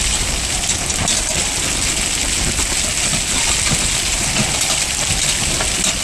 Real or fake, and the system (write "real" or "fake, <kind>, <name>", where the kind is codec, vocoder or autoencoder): real